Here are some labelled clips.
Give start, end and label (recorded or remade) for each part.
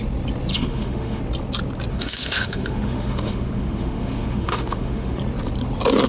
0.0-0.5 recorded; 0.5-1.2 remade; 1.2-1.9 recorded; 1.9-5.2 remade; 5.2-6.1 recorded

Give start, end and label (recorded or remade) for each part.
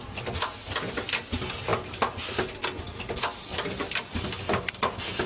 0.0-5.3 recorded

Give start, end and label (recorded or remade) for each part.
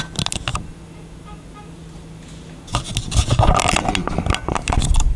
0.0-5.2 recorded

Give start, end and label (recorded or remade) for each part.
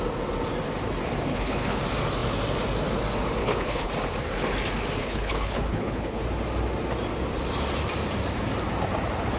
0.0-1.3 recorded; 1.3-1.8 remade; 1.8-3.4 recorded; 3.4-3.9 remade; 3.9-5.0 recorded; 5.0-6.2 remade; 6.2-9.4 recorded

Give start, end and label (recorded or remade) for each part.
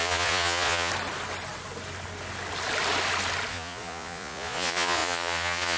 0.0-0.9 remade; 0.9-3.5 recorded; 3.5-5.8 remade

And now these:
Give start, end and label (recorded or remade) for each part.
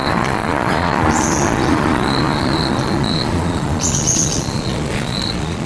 0.0-5.7 remade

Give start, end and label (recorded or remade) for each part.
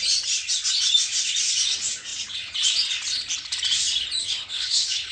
0.0-4.2 recorded; 4.2-5.1 remade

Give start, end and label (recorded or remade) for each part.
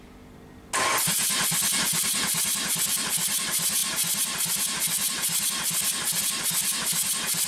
0.0-7.5 recorded